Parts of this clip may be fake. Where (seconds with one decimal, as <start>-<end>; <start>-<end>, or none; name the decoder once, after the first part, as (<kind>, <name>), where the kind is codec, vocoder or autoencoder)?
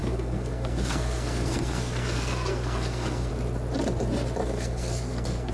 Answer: 0.0-3.3 (codec, SNAC); 4.4-5.5